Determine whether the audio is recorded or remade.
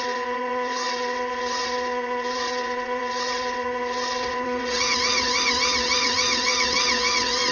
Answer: remade